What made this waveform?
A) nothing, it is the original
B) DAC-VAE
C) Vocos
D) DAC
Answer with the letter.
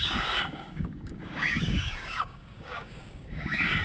D